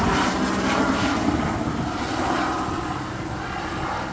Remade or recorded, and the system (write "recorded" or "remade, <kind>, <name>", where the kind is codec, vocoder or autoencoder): recorded